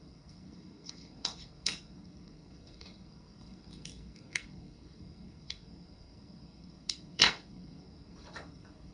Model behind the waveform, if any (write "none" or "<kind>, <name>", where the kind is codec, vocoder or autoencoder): codec, SNAC